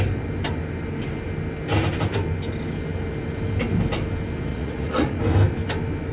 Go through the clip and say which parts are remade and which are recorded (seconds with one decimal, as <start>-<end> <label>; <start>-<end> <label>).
0.0-4.5 recorded; 4.5-5.2 remade; 5.2-6.1 recorded